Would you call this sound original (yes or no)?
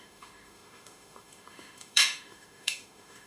no